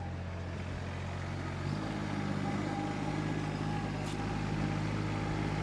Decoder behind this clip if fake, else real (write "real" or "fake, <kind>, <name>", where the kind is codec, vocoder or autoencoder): real